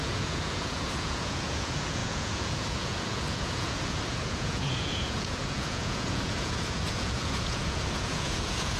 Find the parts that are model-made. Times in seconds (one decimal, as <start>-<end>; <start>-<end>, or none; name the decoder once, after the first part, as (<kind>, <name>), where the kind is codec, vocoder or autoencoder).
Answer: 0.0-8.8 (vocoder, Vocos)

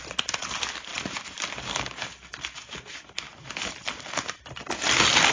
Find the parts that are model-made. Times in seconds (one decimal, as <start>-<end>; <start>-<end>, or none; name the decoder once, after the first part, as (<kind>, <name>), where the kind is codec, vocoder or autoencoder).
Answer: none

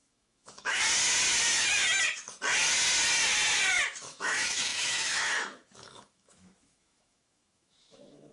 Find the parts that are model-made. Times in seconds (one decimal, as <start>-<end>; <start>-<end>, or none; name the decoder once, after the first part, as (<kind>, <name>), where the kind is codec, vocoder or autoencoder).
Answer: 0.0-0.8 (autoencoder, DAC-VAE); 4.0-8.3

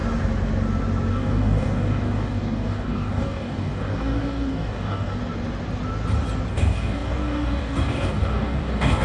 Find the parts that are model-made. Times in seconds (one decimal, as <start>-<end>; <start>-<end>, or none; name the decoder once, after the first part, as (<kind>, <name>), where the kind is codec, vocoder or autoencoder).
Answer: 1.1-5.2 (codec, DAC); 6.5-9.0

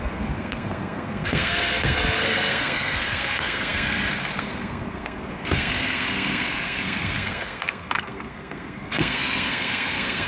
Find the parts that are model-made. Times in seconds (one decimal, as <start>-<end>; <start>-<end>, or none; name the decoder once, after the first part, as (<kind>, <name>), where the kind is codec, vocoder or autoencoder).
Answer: 0.0-10.3 (codec, SNAC)